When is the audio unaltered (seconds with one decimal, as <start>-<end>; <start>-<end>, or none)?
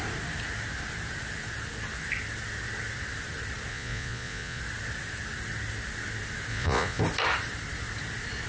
0.0-3.7; 4.6-6.5; 7.0-8.5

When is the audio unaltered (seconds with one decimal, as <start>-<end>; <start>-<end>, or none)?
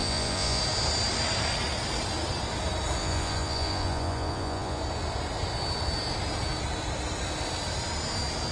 0.6-3.0; 4.8-8.5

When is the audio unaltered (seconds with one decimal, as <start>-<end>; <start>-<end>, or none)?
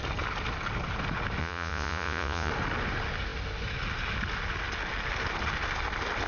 0.0-1.4; 2.5-6.3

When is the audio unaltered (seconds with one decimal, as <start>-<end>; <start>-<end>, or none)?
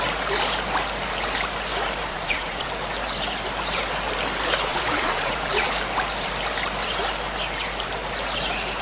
0.0-2.1; 2.7-4.7; 5.7-8.8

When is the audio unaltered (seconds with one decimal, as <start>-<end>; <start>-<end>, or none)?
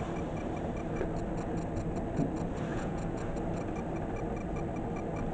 0.0-2.7; 3.2-5.3